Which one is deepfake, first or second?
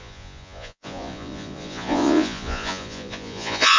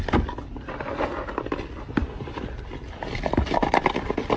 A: first